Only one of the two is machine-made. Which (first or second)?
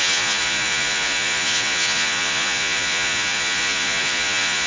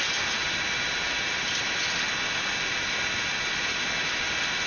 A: first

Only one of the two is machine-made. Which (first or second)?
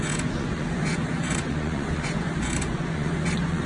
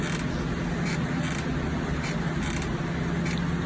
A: first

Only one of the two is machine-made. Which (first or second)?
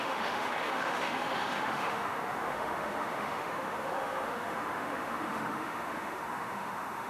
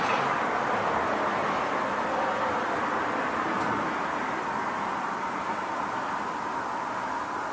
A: first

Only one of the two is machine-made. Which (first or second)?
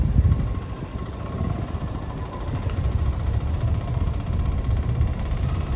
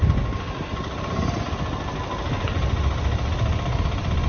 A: first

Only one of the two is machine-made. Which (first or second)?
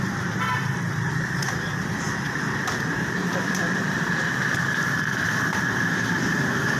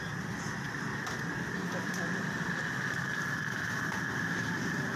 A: first